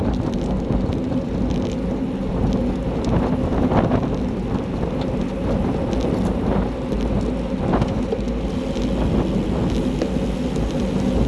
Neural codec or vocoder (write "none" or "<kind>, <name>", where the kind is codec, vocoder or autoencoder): none